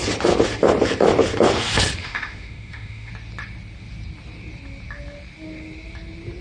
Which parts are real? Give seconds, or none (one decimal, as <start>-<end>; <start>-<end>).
0.0-2.0; 3.1-6.4